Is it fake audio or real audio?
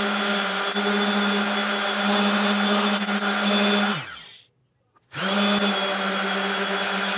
real